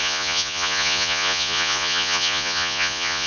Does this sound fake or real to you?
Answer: fake